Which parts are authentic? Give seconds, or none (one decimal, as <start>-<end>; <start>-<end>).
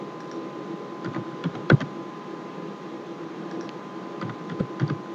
0.0-1.4; 4.3-5.1